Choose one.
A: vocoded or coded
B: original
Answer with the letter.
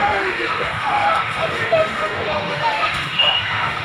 A